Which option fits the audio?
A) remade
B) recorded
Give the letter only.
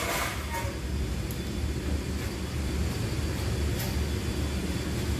B